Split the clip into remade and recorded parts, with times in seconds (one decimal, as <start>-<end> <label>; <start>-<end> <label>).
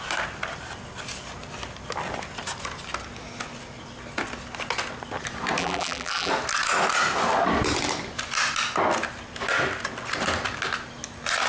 0.0-5.6 recorded; 5.6-6.3 remade; 6.3-11.5 recorded